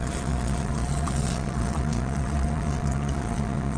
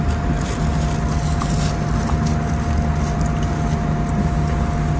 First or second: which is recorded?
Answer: second